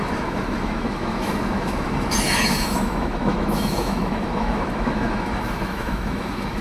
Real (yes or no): no